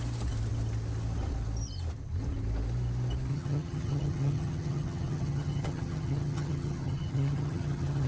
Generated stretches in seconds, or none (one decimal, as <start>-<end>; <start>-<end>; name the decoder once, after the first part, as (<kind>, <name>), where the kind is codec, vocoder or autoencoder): 3.3-8.1 (vocoder, HiFi-GAN)